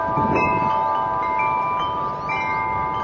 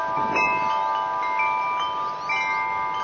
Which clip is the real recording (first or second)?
second